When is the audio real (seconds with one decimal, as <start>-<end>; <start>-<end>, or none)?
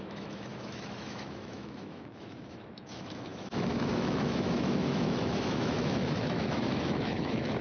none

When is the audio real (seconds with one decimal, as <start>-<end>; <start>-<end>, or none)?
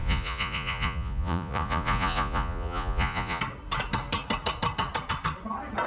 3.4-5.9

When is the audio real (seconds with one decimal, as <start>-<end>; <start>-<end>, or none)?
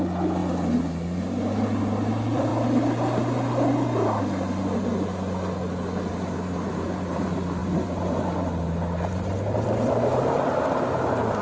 0.4-1.8; 2.5-4.2; 4.9-6.1